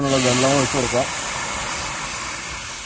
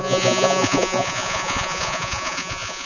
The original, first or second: first